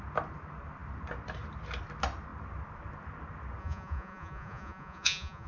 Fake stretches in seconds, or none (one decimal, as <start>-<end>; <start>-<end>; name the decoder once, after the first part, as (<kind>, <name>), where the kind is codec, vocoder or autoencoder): 3.6-5.5 (vocoder, Vocos)